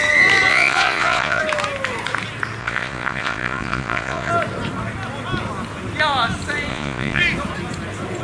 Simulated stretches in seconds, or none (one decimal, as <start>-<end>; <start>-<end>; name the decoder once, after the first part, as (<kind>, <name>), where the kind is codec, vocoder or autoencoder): 0.5-1.4 (vocoder, Vocos); 2.6-4.3; 6.7-7.2

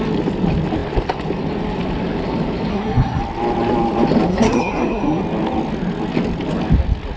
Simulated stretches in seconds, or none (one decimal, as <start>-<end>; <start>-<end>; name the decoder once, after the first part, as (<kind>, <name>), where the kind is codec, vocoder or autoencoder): 2.7-3.2 (codec, SNAC); 4.3-5.2

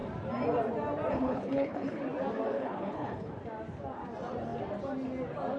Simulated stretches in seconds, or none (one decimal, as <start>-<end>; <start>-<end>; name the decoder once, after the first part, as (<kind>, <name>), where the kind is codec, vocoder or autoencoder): 1.1-2.0 (codec, HILCodec); 2.5-3.3

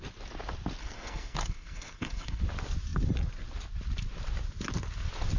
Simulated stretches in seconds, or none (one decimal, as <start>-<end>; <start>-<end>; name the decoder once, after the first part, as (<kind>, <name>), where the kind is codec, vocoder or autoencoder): 0.8-2.4 (codec, SNAC)

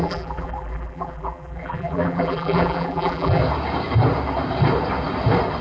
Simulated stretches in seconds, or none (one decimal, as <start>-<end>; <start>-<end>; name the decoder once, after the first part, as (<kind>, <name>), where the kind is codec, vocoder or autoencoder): 0.0-3.4 (vocoder, BigVGAN v2)

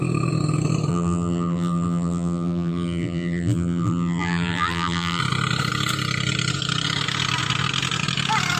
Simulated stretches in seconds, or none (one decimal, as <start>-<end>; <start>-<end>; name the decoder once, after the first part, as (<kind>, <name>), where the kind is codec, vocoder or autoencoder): 0.9-5.2 (vocoder, BigVGAN v2)

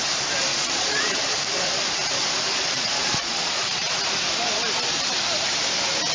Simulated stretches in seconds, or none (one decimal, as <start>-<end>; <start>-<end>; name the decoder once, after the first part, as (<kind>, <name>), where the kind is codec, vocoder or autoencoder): 0.5-1.2 (vocoder, Vocos); 2.5-3.9